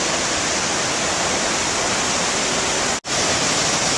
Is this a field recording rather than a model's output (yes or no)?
yes